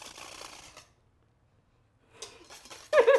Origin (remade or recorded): recorded